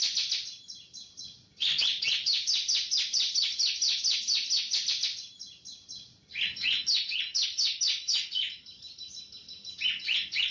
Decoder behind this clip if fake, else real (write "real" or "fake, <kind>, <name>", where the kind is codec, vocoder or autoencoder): real